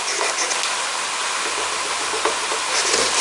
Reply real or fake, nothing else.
real